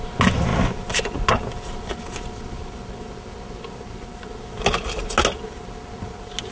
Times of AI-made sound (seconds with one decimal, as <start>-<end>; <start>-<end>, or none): none